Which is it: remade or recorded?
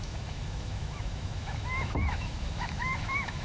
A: remade